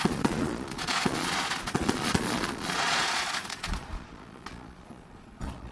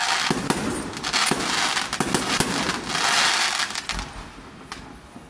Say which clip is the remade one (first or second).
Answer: first